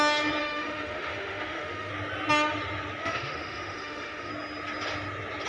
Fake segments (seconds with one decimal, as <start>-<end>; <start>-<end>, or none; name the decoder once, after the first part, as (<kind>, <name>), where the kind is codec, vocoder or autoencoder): 0.4-1.9 (autoencoder, DAC-VAE); 3.0-4.3